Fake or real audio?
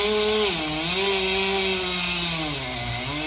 real